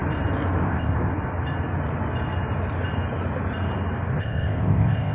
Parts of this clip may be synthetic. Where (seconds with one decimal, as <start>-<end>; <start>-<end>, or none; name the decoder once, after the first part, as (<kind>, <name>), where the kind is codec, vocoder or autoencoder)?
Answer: 0.6-1.1 (codec, ZipCodec); 4.2-5.1